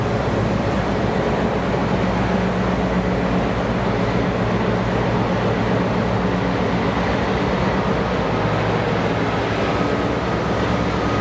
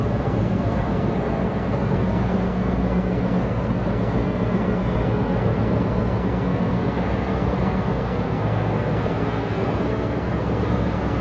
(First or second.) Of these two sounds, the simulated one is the second